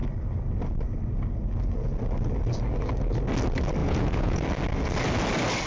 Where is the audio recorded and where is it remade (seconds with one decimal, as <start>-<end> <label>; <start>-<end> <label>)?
0.0-3.8 recorded; 3.8-4.4 remade; 4.4-5.7 recorded